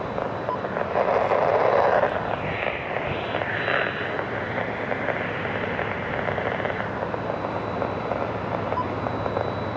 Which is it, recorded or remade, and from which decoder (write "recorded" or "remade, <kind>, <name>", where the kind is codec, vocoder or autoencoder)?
remade, vocoder, BigVGAN v2